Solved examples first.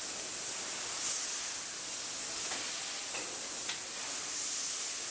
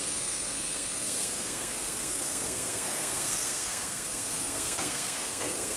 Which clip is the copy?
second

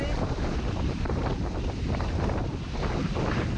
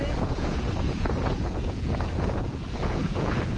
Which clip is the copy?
second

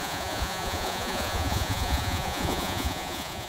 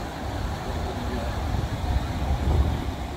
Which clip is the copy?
first